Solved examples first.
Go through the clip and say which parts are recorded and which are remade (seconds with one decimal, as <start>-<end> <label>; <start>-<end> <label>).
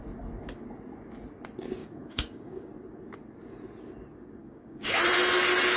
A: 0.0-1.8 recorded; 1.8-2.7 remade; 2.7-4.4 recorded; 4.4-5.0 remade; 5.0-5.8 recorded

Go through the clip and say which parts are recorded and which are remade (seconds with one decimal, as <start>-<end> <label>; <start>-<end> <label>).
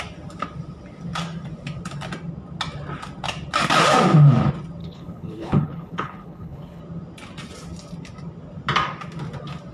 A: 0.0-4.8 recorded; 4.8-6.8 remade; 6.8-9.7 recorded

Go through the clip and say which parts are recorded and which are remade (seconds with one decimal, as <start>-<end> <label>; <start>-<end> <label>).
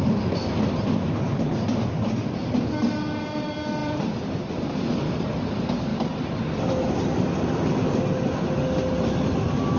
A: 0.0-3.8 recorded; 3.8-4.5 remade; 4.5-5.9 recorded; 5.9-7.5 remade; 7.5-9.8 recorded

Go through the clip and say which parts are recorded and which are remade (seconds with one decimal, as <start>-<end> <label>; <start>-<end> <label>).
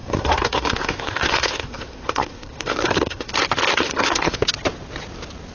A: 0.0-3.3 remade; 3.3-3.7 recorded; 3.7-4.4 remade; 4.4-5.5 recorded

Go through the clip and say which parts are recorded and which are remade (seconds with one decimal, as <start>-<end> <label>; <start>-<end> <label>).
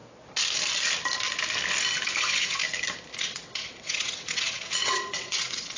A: 0.0-2.2 recorded; 2.2-2.6 remade; 2.6-3.2 recorded; 3.2-5.8 remade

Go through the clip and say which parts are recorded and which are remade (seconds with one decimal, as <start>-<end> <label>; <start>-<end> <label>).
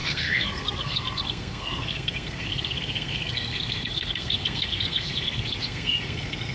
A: 0.0-6.5 remade